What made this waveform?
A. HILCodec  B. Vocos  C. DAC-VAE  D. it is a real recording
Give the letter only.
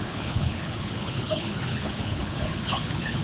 A